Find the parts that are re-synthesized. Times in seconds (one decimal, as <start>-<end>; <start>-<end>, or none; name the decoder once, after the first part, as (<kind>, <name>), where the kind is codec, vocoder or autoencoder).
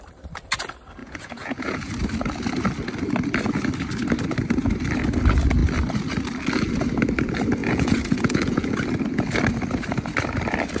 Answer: 1.0-1.9 (vocoder, Vocos); 7.6-8.7